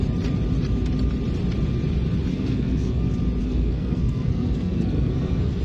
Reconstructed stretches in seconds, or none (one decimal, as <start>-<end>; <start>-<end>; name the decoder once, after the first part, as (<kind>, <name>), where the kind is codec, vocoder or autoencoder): 2.3-3.0 (codec, SNAC); 3.4-5.6